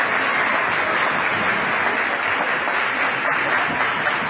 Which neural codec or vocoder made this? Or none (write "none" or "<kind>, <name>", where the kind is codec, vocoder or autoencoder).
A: none